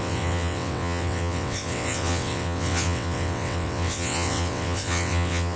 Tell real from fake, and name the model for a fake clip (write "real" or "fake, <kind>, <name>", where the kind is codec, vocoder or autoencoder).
fake, vocoder, WaveNeXt